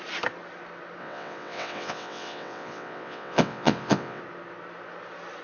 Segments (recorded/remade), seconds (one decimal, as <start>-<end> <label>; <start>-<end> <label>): 0.0-1.0 recorded; 1.0-4.2 remade; 4.2-5.4 recorded